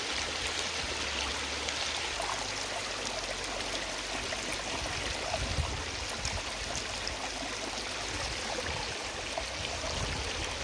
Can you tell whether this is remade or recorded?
recorded